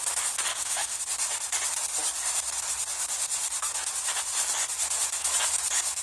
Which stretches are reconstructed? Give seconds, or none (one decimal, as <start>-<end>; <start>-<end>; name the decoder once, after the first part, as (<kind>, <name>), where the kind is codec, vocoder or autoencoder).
0.5-1.0 (autoencoder, DAC-VAE)